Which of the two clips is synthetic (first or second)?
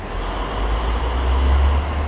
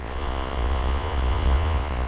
second